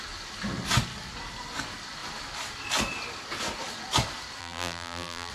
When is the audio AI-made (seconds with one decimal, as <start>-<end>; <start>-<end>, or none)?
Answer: 4.4-5.3